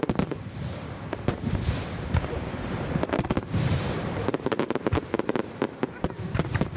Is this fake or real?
fake